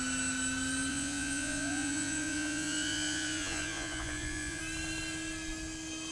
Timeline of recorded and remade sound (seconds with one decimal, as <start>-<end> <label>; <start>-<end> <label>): 0.0-0.9 recorded; 0.9-4.6 remade; 4.6-6.1 recorded

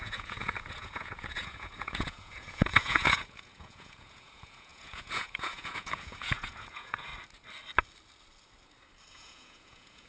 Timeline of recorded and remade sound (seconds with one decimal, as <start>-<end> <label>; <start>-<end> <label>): 0.0-7.1 remade; 7.1-9.1 recorded; 9.1-10.1 remade

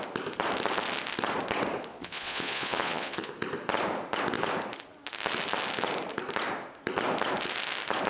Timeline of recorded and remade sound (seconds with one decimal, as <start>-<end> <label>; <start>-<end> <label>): 0.0-1.9 recorded; 1.9-3.3 remade; 3.3-8.1 recorded